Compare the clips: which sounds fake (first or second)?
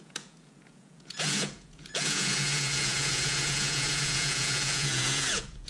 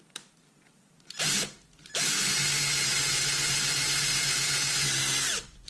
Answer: first